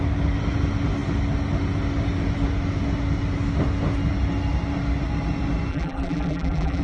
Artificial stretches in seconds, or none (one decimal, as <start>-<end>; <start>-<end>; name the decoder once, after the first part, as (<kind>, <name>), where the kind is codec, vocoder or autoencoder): 5.7-6.8 (vocoder, BigVGAN v2)